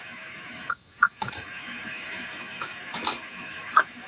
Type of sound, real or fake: fake